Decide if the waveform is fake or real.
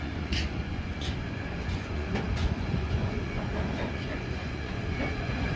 fake